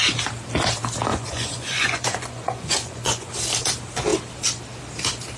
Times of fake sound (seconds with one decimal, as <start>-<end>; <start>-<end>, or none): 1.1-3.3